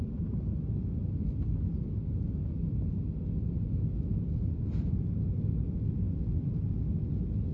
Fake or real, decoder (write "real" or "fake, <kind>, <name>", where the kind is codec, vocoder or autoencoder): real